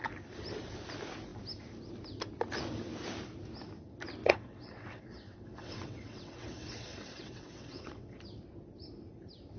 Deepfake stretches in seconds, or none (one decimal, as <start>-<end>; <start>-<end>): 4.2-8.2

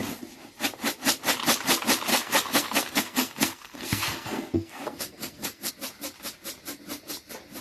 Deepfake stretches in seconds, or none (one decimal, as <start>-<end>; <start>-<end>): 2.1-5.7

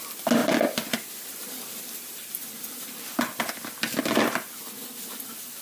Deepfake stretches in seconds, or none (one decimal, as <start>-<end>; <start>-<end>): 0.4-0.9; 1.3-3.4

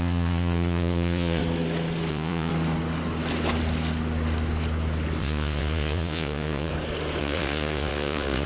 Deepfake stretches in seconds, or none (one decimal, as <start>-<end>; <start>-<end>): 0.0-1.4; 2.1-2.5; 5.2-6.7; 7.2-8.5

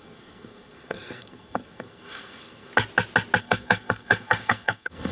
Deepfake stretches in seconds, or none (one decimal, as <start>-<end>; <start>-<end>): 0.0-2.7; 3.4-5.1

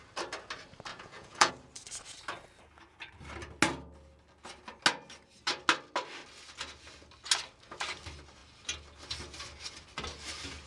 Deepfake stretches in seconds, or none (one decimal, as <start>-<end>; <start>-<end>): 0.9-1.5

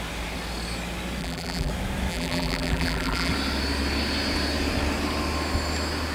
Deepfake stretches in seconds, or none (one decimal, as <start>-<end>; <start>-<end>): 1.2-1.7; 2.1-3.3